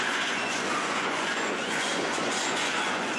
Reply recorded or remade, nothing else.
remade